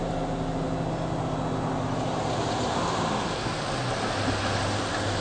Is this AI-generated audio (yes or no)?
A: no